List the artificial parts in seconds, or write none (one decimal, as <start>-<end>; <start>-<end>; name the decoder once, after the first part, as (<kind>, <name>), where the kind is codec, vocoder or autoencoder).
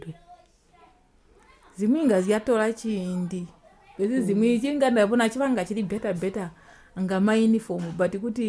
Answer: none